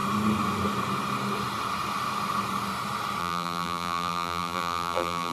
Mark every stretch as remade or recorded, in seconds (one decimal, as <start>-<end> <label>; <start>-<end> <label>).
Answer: 0.0-3.2 recorded; 3.2-5.3 remade